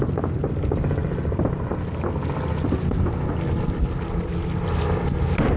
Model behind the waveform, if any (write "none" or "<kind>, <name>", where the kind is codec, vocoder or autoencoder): none